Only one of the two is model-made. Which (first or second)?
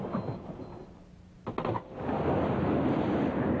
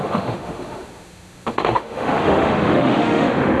second